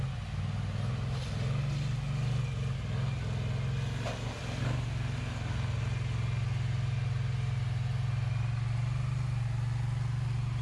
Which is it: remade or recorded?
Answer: recorded